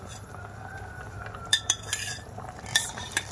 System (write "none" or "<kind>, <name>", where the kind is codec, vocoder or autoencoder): vocoder, BigVGAN v2